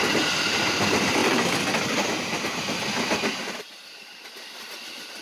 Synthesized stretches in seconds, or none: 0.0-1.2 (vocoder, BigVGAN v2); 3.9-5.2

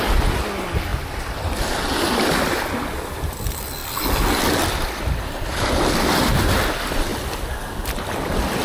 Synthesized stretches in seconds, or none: none